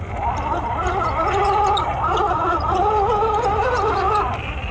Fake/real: real